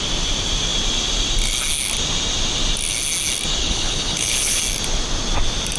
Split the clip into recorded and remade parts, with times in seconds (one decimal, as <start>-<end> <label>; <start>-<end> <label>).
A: 0.0-3.6 recorded; 3.6-4.6 remade; 4.6-5.8 recorded